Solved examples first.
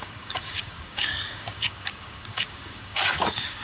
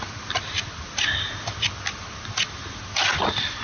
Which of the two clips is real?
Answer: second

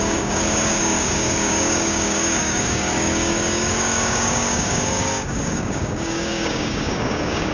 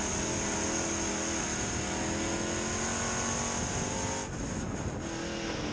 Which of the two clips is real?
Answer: second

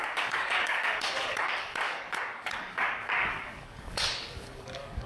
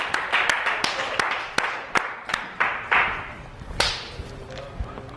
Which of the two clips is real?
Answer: second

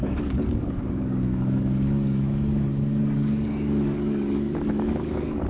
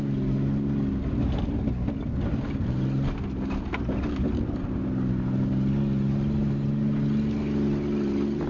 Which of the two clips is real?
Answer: second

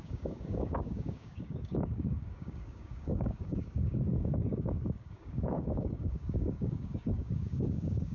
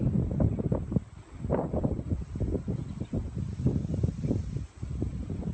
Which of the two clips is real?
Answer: second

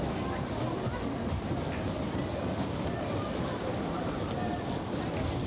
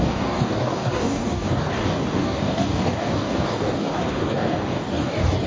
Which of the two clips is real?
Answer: first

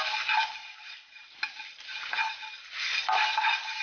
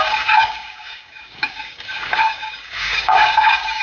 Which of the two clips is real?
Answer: first